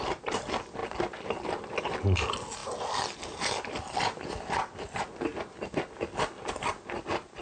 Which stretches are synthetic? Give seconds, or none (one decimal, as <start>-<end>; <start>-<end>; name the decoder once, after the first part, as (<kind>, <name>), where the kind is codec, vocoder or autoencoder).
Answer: none